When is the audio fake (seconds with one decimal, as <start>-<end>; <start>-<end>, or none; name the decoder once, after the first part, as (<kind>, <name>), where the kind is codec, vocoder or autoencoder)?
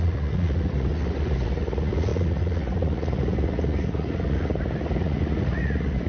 0.0-6.1 (vocoder, Vocos)